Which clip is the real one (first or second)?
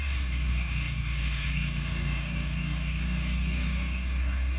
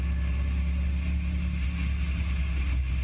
second